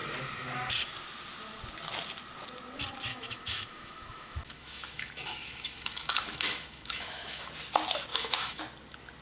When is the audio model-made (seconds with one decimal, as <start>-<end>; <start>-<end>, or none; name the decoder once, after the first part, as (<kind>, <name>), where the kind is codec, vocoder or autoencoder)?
3.1-7.5 (autoencoder, DAC-VAE); 8.1-8.6